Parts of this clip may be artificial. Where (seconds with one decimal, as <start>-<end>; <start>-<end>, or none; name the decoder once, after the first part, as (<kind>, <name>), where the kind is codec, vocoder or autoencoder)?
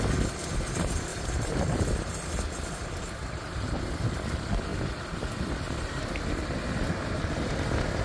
1.1-2.1 (vocoder, BigVGAN v2); 4.7-5.5